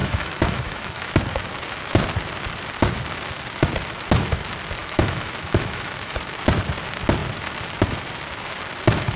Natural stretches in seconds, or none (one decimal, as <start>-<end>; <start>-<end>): 1.1-4.8; 6.2-9.2